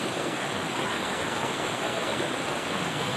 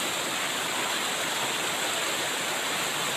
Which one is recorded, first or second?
second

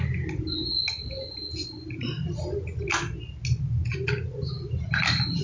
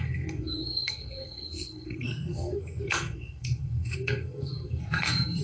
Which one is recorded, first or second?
first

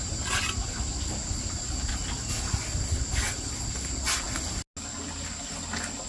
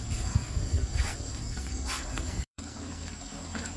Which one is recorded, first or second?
first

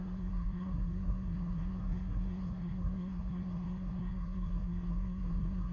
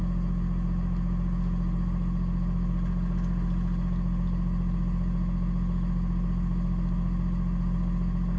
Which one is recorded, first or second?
second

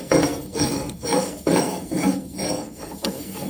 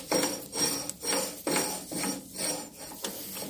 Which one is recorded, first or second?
second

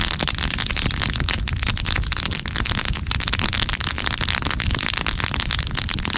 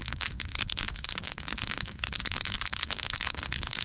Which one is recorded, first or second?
first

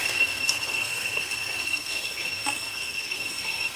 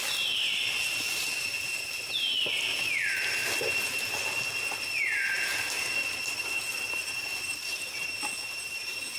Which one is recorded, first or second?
second